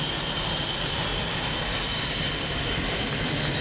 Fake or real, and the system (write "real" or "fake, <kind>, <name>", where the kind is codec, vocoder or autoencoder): real